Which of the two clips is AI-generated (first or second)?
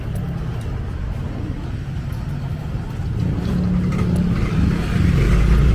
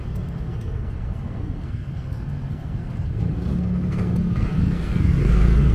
second